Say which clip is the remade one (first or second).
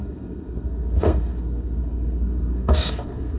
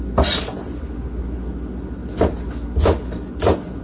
first